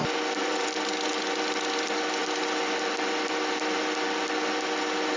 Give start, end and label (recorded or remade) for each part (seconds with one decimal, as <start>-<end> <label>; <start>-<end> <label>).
0.0-5.2 recorded